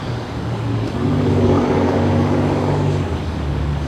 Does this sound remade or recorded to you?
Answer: remade